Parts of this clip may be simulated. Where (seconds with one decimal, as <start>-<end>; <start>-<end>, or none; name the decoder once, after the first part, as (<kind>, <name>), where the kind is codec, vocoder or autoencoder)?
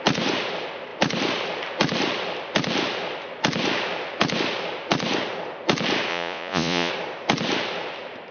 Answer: 6.1-6.9 (vocoder, Vocos)